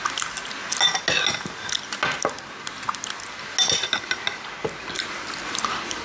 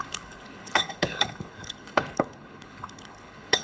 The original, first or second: first